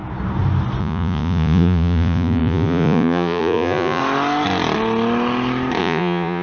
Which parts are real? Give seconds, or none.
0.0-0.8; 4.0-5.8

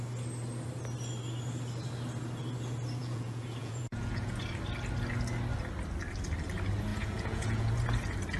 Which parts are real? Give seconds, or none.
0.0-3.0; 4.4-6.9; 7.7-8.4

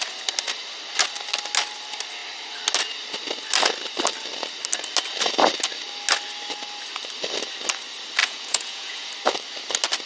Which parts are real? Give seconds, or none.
0.0-8.2; 9.1-10.1

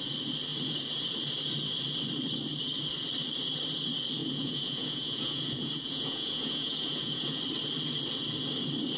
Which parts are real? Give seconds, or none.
0.0-4.2; 7.4-9.0

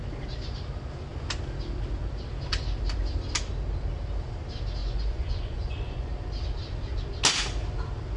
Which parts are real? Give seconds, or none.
0.0-4.8; 6.1-8.2